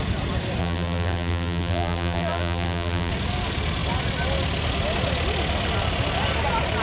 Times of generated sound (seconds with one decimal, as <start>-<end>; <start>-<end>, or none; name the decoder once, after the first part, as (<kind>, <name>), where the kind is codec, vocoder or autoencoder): 0.6-3.1 (vocoder, BigVGAN v2)